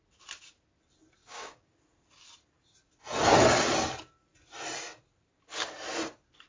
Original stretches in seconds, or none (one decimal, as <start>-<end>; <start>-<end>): 0.0-1.2; 1.7-6.5